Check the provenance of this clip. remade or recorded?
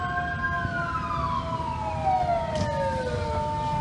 recorded